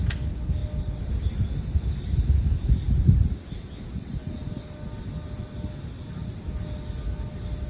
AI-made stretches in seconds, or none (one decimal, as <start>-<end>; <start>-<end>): none